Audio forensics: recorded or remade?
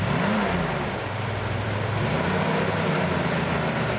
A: remade